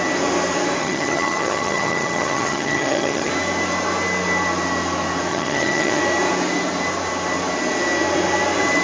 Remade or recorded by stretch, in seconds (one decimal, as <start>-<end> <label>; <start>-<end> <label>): 0.0-0.8 recorded; 0.8-3.3 remade; 3.3-5.3 recorded; 5.3-6.0 remade; 6.0-8.8 recorded